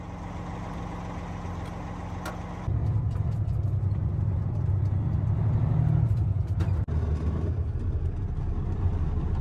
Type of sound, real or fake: real